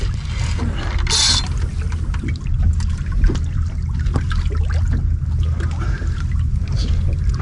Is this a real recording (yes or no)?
yes